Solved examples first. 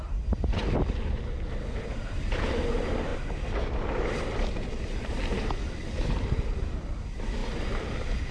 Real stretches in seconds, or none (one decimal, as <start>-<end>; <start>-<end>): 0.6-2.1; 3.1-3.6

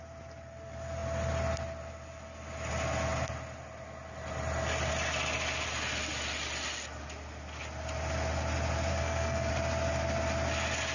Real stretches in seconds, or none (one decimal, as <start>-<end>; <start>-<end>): 0.0-8.9; 9.5-10.9

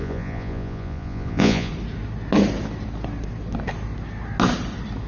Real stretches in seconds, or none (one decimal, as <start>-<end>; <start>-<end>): 1.7-5.1

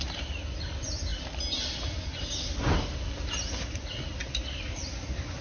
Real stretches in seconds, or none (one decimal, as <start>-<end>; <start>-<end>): 0.0-5.4